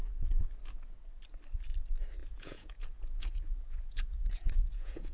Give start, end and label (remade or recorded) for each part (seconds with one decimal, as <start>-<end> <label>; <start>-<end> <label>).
0.0-2.2 recorded; 2.2-5.1 remade